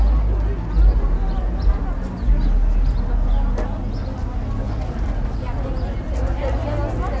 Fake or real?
real